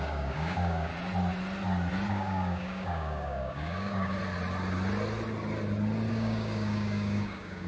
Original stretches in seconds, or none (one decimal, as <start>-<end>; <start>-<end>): 0.9-2.1; 4.2-6.1